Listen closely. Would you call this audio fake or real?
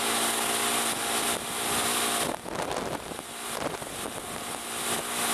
real